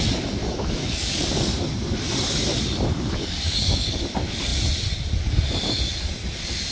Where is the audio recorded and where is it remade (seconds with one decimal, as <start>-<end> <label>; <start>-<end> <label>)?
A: 0.0-0.4 recorded; 0.4-1.4 remade; 1.4-2.9 recorded; 2.9-4.0 remade; 4.0-6.7 recorded

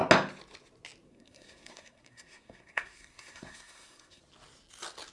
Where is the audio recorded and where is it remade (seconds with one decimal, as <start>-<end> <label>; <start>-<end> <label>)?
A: 0.0-1.1 recorded; 1.1-4.2 remade; 4.2-5.1 recorded

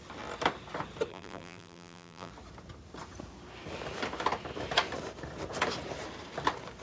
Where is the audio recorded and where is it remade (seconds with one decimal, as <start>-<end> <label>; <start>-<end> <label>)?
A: 0.0-1.1 recorded; 1.1-2.3 remade; 2.3-6.8 recorded

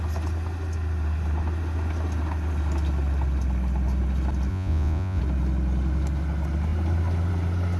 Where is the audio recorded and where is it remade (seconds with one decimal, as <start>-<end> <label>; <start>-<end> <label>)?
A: 0.0-4.5 recorded; 4.5-5.2 remade; 5.2-7.8 recorded

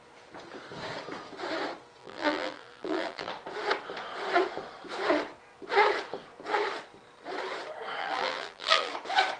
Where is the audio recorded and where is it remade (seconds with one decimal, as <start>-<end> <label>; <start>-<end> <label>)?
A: 0.0-2.0 recorded; 2.0-3.3 remade; 3.3-8.0 recorded; 8.0-8.9 remade; 8.9-9.4 recorded

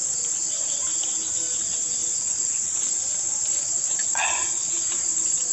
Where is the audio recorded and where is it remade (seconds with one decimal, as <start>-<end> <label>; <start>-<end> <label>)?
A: 0.0-2.0 recorded; 2.0-3.0 remade; 3.0-3.7 recorded; 3.7-4.7 remade; 4.7-5.5 recorded

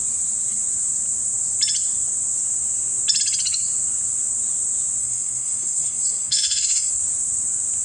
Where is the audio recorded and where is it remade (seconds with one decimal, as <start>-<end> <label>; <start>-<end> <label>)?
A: 0.0-5.0 recorded; 5.0-6.9 remade; 6.9-7.8 recorded

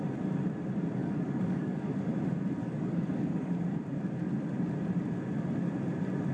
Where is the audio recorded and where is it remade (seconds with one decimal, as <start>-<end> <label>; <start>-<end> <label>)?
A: 0.0-1.0 recorded; 1.0-1.9 remade; 1.9-2.6 recorded; 2.6-3.5 remade; 3.5-6.3 recorded